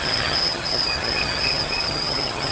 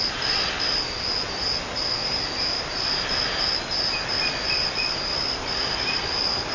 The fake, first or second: first